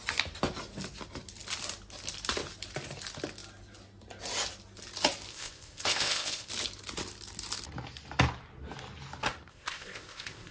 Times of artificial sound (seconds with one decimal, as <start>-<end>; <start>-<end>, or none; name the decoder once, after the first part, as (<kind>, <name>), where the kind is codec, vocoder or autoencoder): 5.3-6.5 (codec, ZipCodec); 9.5-10.5